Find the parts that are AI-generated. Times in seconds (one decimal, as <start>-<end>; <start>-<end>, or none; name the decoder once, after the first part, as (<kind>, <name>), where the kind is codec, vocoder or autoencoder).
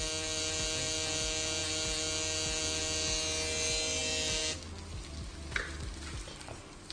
none